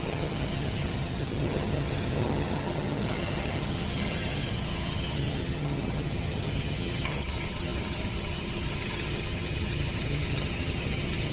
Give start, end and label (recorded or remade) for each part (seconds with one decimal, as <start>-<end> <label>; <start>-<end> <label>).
0.0-11.3 remade